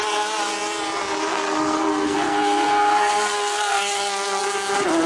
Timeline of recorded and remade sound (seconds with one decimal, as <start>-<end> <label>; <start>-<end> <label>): 0.0-1.3 recorded; 1.3-4.4 remade; 4.4-5.1 recorded